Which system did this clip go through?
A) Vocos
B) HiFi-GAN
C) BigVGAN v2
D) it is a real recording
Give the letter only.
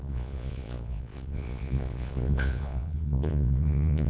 A